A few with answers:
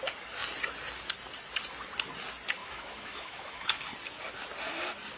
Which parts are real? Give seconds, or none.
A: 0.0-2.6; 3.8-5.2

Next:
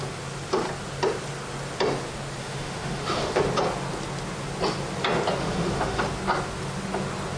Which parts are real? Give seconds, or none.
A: 0.0-2.4; 3.4-5.4; 6.0-7.4

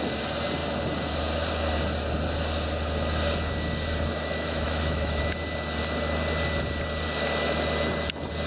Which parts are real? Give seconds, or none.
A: 0.0-4.1; 5.2-8.5

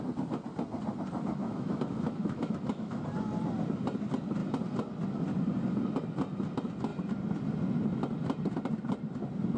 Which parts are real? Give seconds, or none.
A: 0.0-1.4; 3.0-9.6